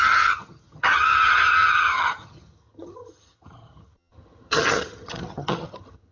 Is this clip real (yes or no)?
no